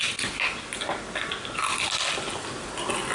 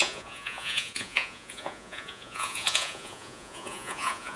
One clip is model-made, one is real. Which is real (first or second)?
first